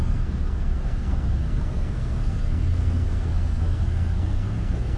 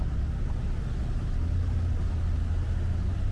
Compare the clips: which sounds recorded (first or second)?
second